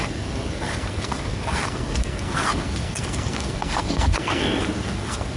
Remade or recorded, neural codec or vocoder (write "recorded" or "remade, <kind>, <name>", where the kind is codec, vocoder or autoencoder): remade, codec, SNAC